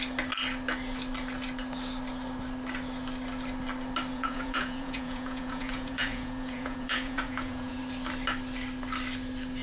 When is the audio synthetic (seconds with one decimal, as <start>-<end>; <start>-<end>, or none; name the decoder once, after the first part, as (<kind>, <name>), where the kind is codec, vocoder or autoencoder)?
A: 4.1-7.8 (vocoder, Vocos)